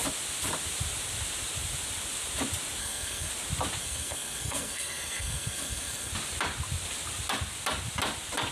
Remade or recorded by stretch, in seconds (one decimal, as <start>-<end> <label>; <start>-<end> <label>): 0.0-2.8 recorded; 2.8-3.3 remade; 3.3-3.8 recorded; 3.8-6.1 remade; 6.1-8.5 recorded

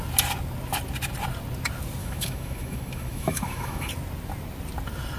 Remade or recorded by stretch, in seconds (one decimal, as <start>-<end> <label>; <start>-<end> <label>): 0.0-2.0 recorded; 2.0-3.9 remade; 3.9-5.2 recorded

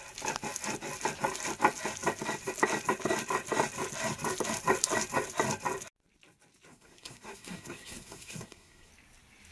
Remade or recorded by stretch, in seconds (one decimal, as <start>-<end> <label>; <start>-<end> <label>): 0.0-6.7 recorded; 6.7-8.9 remade; 8.9-9.5 recorded

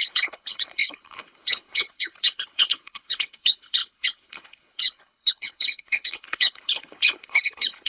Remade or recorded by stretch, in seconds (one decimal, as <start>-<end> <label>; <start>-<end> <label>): 0.0-7.9 remade

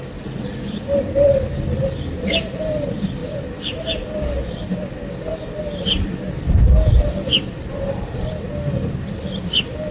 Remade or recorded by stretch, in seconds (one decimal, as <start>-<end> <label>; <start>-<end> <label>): 0.0-9.9 recorded

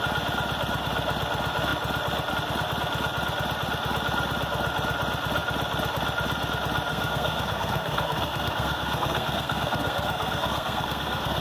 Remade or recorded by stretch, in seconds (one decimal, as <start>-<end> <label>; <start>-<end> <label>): 0.0-6.9 recorded; 6.9-11.4 remade